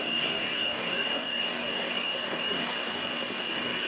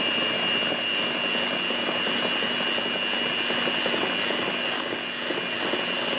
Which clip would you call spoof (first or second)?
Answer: first